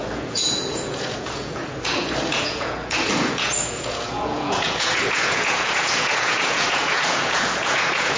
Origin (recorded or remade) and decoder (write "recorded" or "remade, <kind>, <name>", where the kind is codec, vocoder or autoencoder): remade, vocoder, Vocos